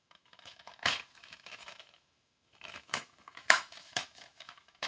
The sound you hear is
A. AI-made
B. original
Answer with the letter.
A